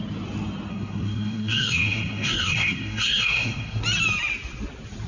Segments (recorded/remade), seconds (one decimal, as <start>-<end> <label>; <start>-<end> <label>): 0.0-0.7 recorded; 0.7-3.8 remade; 3.8-5.1 recorded

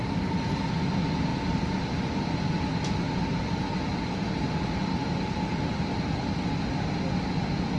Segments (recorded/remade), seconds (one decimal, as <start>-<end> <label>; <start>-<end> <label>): 0.0-1.3 recorded; 1.3-2.1 remade; 2.1-7.8 recorded

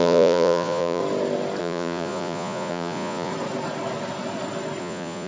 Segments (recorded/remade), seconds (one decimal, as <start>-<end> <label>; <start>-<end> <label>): 0.0-1.0 remade; 1.0-1.6 recorded; 1.6-3.3 remade; 3.3-4.8 recorded; 4.8-5.3 remade

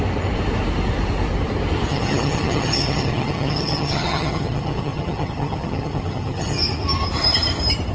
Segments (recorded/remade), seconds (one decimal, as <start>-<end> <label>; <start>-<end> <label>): 0.0-1.9 recorded; 1.9-6.6 remade; 6.6-7.9 recorded